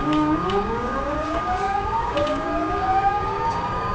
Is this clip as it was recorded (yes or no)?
no